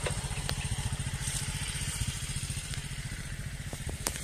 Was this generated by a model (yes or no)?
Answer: yes